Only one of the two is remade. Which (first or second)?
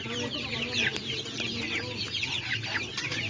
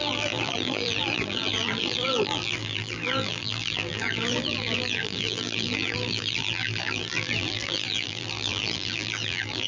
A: second